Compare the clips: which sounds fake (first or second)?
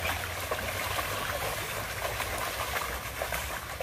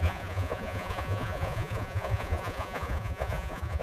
second